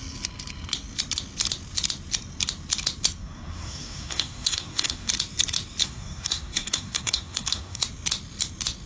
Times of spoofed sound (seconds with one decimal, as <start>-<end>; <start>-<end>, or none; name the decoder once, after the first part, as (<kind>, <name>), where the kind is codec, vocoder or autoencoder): 3.2-5.1 (codec, SNAC); 5.8-7.8